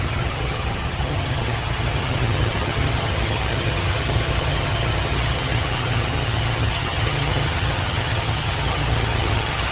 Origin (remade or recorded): remade